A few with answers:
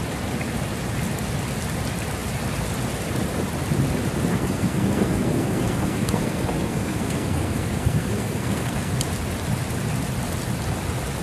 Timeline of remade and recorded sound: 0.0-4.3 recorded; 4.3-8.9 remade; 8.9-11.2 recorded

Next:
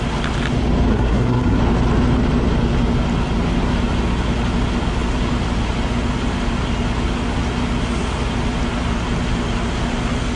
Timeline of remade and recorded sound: 0.0-0.9 recorded; 0.9-1.6 remade; 1.6-10.4 recorded

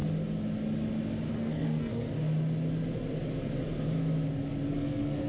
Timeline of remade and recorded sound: 0.0-1.3 recorded; 1.3-1.9 remade; 1.9-4.7 recorded; 4.7-5.3 remade